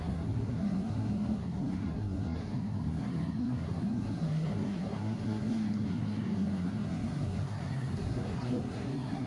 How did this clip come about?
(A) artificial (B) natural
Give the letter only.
A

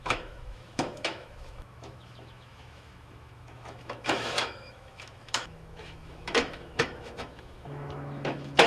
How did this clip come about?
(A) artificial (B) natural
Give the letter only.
A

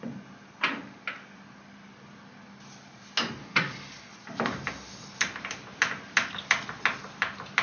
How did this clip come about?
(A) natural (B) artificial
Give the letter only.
A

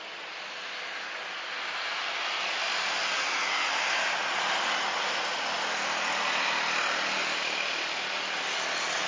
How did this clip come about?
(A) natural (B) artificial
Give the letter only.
A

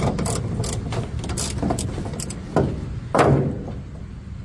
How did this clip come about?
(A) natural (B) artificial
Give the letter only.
A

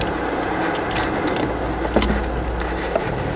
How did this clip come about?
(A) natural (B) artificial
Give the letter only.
A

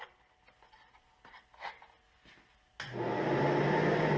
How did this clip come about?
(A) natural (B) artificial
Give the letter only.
A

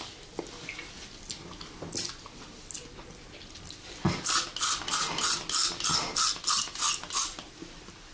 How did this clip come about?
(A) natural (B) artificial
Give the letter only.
A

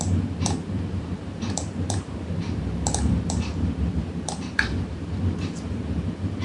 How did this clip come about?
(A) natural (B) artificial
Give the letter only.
B